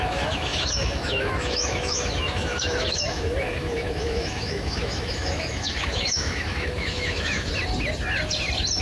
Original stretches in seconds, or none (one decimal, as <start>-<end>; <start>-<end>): 7.5-8.8